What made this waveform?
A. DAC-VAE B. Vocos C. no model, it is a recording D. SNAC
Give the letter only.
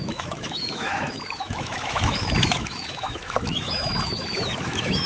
A